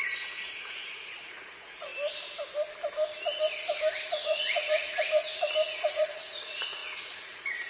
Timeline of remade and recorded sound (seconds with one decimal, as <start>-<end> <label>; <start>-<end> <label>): 0.0-1.9 remade; 1.9-4.1 recorded; 4.1-5.2 remade; 5.2-5.8 recorded; 5.8-7.7 remade